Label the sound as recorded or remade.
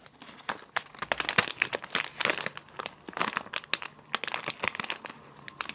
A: recorded